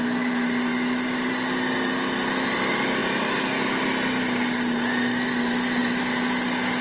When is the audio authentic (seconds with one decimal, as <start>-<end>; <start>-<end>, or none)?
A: 0.0-6.8